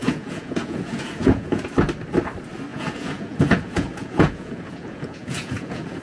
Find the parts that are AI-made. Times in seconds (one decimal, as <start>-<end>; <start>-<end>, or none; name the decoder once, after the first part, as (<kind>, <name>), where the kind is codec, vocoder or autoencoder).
0.0-1.7 (vocoder, Vocos); 2.7-6.0